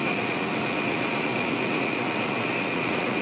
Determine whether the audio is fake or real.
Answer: fake